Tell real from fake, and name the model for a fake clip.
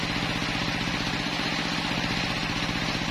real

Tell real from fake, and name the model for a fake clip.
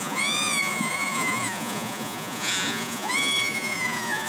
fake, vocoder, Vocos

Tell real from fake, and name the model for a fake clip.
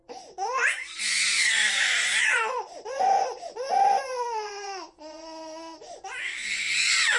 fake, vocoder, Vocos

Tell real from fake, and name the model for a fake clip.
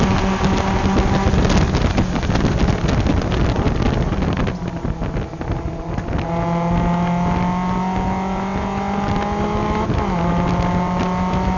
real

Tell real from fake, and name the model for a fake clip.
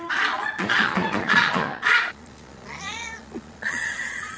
fake, vocoder, Vocos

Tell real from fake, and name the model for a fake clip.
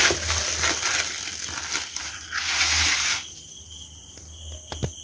real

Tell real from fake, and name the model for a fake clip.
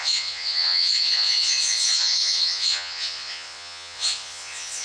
fake, vocoder, Vocos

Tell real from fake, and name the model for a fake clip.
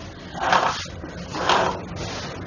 real